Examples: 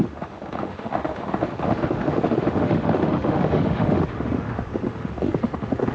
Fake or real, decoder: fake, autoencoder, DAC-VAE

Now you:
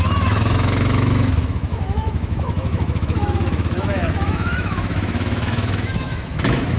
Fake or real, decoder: fake, autoencoder, DAC-VAE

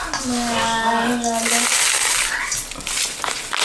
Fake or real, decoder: real